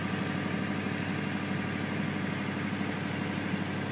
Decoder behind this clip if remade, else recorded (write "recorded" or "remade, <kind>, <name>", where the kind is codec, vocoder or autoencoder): recorded